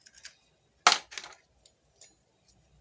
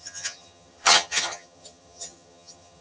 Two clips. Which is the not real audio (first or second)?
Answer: second